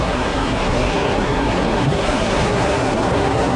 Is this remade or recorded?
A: remade